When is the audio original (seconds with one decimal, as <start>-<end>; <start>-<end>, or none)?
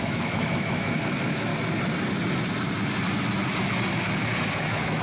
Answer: 1.5-4.5